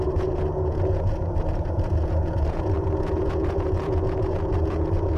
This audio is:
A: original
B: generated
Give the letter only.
B